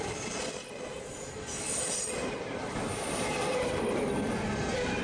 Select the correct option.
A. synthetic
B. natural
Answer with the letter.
B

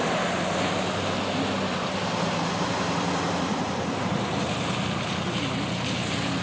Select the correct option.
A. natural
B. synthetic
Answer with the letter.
A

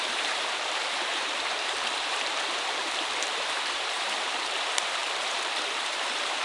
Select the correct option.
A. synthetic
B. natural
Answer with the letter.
A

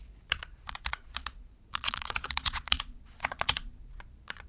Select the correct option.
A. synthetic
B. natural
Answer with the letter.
A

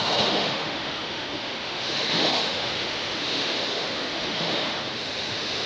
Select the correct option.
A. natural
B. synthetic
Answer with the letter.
B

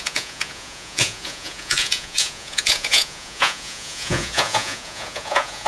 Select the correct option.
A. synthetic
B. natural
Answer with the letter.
A